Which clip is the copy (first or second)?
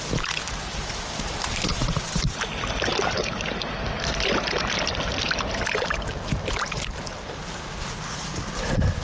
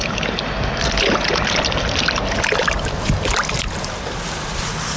first